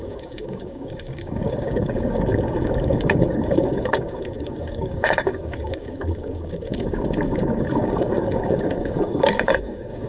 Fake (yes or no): yes